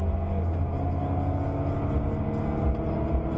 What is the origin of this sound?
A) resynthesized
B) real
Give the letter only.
B